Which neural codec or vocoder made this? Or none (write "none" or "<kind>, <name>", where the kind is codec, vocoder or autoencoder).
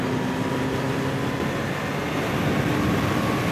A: none